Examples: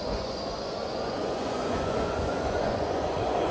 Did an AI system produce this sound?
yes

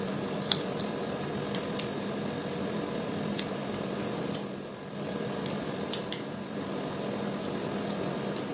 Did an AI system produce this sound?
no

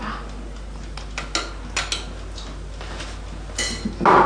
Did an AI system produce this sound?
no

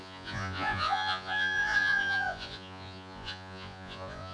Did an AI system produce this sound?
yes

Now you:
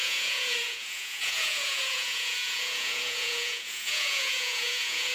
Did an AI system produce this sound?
yes